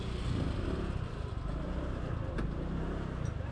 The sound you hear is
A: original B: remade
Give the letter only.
A